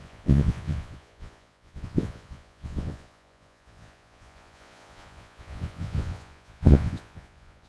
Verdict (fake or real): fake